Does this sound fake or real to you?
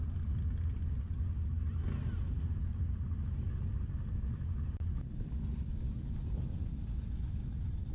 real